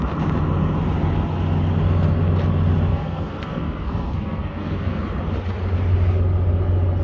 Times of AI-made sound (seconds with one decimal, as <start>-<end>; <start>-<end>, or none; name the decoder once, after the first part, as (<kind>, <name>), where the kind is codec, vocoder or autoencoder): 2.9-5.0 (codec, SNAC)